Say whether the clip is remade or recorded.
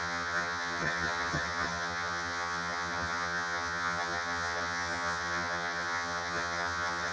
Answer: remade